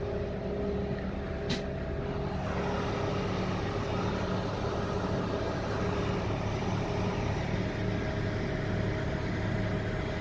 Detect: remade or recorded recorded